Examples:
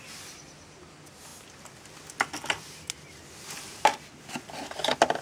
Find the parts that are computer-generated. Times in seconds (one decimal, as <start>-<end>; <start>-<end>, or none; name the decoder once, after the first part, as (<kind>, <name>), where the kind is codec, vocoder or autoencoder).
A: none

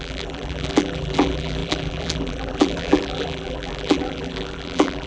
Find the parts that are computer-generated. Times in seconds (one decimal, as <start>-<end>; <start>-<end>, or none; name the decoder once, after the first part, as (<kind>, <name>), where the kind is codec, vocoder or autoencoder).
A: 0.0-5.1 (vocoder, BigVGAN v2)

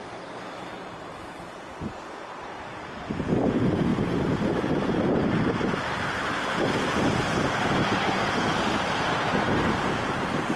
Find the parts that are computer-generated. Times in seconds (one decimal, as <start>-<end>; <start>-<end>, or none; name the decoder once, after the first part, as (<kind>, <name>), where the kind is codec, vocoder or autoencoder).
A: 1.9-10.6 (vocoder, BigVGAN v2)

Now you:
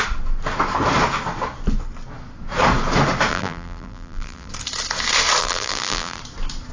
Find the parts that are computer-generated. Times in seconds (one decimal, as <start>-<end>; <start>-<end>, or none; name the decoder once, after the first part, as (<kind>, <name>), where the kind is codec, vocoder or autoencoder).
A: 3.3-4.5 (vocoder, BigVGAN v2); 5.4-6.2